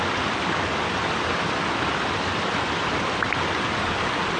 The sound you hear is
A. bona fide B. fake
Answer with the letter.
A